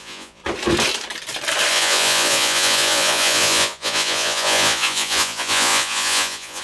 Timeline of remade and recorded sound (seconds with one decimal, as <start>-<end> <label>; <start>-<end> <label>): 0.0-0.4 remade; 0.4-1.7 recorded; 1.7-6.6 remade